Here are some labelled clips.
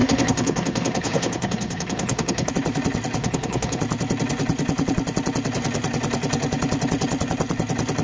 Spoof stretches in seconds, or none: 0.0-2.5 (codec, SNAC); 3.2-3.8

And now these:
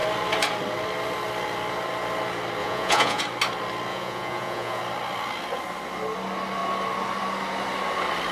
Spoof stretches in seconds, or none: 2.6-3.2 (vocoder, Vocos); 3.9-4.8

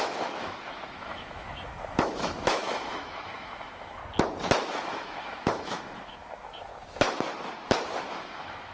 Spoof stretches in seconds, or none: 0.0-4.0 (autoencoder, DAC-VAE); 4.8-6.7; 8.1-8.7

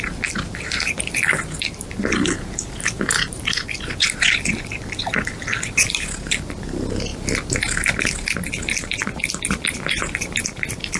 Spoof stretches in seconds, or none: none

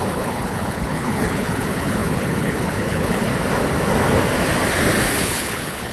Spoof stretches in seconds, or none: 0.0-3.3 (codec, HILCodec); 5.2-5.9

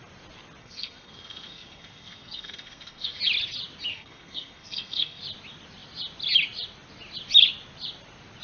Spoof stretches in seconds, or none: 0.6-3.2 (codec, SNAC); 3.9-5.2

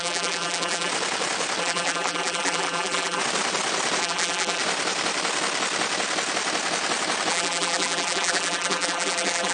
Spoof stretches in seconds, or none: 0.0-0.9 (vocoder, BigVGAN v2); 1.6-3.2; 4.0-4.6; 7.3-9.5

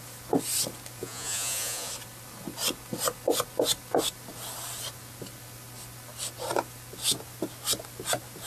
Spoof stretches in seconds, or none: 1.0-1.9 (vocoder, Vocos)